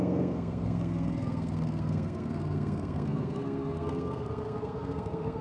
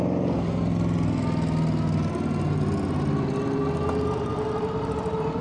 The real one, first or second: second